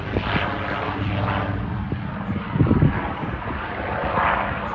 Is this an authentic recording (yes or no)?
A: yes